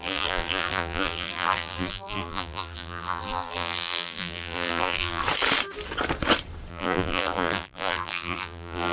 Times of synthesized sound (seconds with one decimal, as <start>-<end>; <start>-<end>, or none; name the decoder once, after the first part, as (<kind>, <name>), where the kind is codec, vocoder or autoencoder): 0.0-5.2 (vocoder, BigVGAN v2); 6.7-8.9